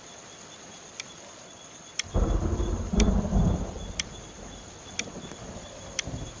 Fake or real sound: fake